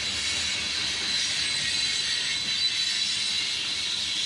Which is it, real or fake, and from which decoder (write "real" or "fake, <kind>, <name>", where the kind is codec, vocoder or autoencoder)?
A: real